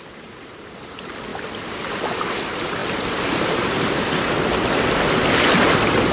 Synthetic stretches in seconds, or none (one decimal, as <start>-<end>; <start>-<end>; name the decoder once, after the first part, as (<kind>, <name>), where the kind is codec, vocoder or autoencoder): none